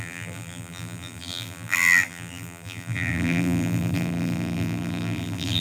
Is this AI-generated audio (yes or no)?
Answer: yes